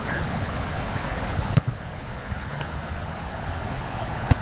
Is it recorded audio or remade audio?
remade